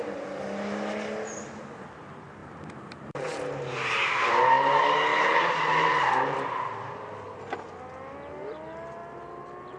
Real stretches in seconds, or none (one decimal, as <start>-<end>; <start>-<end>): 0.0-2.4; 4.3-9.8